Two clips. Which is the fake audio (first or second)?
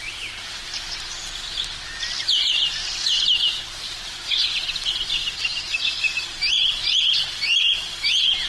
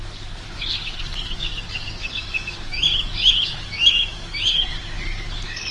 second